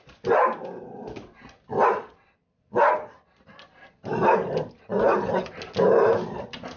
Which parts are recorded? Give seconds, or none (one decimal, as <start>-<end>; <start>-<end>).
0.0-6.8